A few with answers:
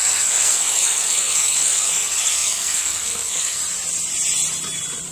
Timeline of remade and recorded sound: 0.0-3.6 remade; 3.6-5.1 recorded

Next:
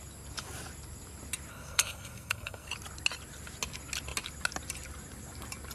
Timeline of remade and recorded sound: 0.0-1.5 recorded; 1.5-2.7 remade; 2.7-5.7 recorded

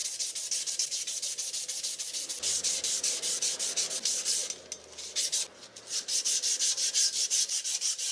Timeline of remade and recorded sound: 0.0-8.1 recorded

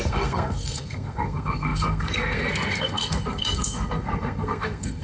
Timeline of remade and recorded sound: 0.0-5.0 remade

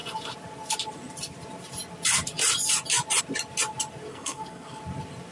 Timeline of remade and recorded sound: 0.0-4.1 recorded; 4.1-4.8 remade; 4.8-5.3 recorded

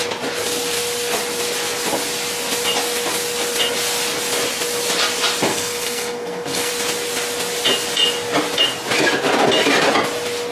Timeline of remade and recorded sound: 0.0-5.5 recorded; 5.5-6.7 remade; 6.7-10.5 recorded